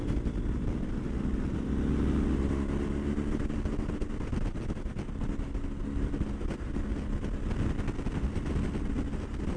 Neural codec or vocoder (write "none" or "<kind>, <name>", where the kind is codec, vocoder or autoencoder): none